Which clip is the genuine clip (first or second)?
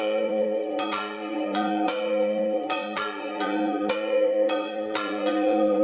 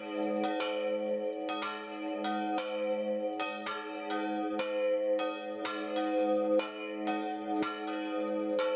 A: second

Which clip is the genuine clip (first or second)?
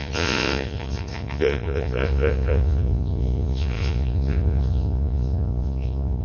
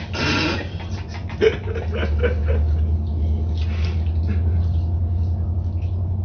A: second